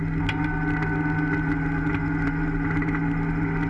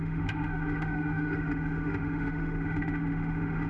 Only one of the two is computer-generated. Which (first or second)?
second